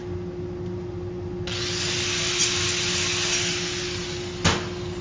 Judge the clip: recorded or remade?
recorded